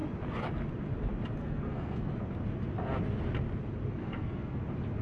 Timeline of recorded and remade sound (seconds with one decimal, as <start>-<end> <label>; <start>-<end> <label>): 0.0-1.4 recorded; 1.4-2.1 remade; 2.1-4.0 recorded; 4.0-4.6 remade; 4.6-5.0 recorded